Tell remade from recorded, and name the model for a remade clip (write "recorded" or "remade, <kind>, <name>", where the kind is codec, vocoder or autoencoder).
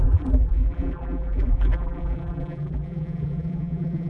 remade, vocoder, BigVGAN v2